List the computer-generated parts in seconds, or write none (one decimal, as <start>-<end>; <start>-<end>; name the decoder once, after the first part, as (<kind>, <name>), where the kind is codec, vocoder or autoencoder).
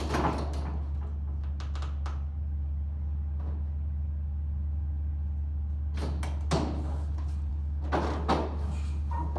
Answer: none